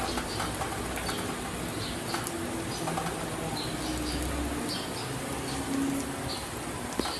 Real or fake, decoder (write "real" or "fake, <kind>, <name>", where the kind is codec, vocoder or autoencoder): real